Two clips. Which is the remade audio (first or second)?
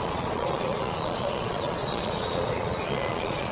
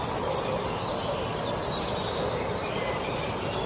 first